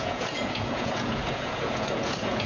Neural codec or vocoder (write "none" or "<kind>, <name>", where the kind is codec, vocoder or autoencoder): vocoder, Vocos